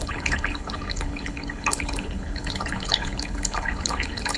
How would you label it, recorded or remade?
remade